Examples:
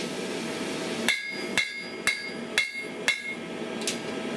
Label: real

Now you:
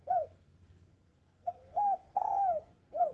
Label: fake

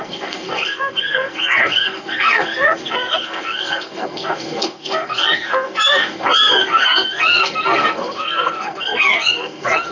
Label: fake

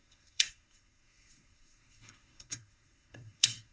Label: fake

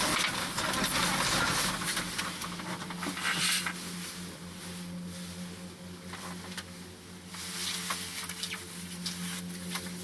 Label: real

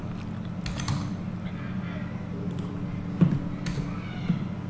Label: real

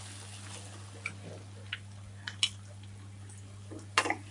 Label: real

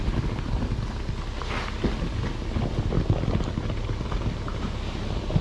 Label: real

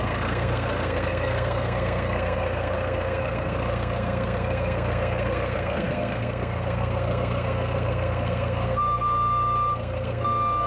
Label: fake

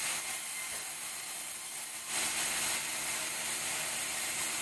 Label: real